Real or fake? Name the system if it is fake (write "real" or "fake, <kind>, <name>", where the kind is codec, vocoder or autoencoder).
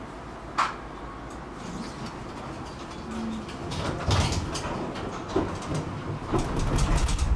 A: real